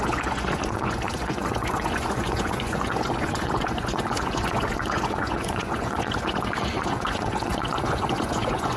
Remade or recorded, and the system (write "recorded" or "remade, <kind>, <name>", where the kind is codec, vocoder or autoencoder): remade, vocoder, Vocos